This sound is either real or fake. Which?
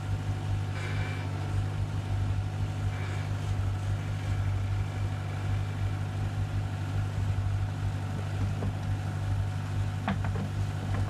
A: real